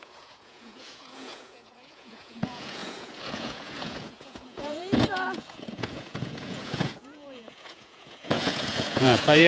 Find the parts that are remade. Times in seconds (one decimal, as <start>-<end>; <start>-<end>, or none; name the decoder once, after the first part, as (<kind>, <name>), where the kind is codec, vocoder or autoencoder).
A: 0.0-9.5 (vocoder, Vocos)